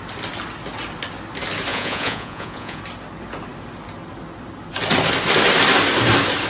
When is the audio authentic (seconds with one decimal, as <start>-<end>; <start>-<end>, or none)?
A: 0.0-1.7; 2.8-6.5